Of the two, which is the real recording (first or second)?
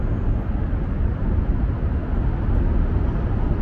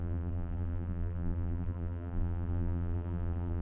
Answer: first